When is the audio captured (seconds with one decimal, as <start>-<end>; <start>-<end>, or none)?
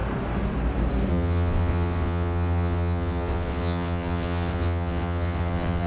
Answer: 0.0-1.1